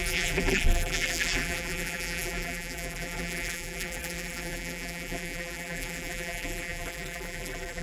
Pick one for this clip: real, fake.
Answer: fake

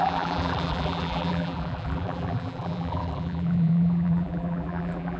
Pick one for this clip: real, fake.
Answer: fake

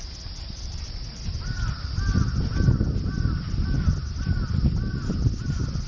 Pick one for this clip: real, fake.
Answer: real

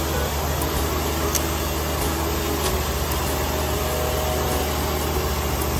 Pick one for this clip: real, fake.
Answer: real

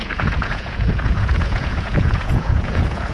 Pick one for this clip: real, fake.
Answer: fake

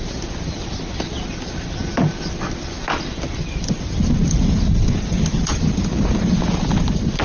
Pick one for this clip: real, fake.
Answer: real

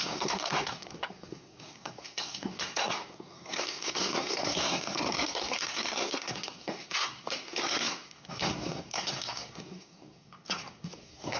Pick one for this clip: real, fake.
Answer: fake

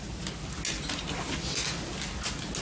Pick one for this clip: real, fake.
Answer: real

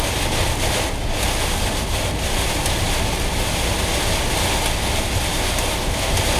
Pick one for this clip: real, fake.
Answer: real